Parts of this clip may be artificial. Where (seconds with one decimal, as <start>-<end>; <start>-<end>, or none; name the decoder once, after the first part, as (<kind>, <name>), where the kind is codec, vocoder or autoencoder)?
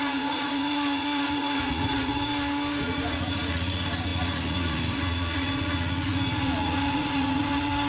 0.0-2.3 (vocoder, Vocos); 2.8-7.9